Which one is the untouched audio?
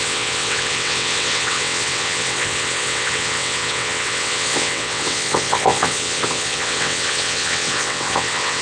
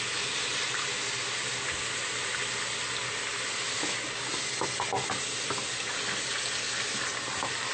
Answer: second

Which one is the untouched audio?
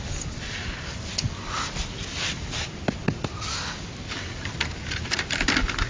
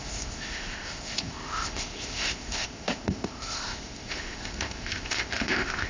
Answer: first